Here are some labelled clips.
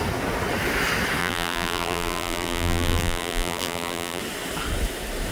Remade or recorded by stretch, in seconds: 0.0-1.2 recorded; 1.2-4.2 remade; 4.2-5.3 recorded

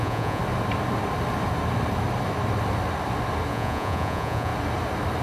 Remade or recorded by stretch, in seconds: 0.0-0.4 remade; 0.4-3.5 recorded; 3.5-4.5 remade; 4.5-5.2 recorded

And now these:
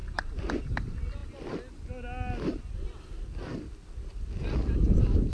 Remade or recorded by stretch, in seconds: 0.0-0.6 remade; 0.6-5.3 recorded

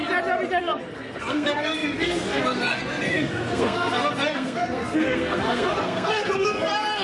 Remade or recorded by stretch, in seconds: 0.0-0.6 recorded; 0.6-7.0 remade